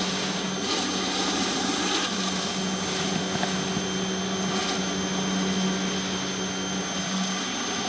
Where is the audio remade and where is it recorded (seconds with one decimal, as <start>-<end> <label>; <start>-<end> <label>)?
0.0-7.9 recorded